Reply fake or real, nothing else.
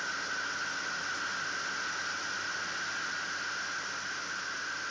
real